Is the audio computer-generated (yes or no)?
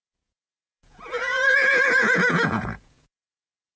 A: yes